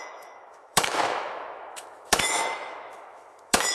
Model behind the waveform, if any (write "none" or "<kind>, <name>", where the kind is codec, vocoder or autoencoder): autoencoder, DAC-VAE